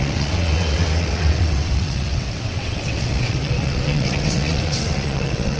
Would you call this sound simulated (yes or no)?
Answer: yes